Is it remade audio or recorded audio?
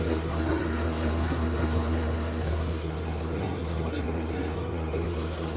remade